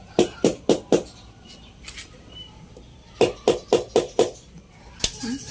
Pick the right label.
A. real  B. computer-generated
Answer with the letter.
A